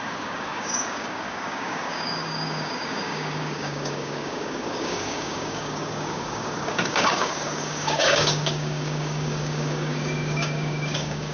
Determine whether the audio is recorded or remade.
remade